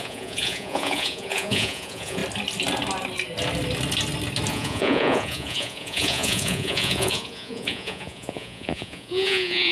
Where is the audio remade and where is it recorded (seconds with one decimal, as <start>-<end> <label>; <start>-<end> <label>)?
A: 0.0-2.2 remade; 2.2-4.5 recorded; 4.5-9.7 remade